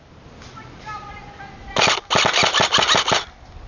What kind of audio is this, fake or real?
real